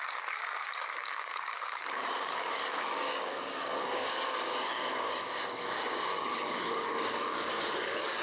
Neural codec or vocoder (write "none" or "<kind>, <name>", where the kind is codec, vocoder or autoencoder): codec, DAC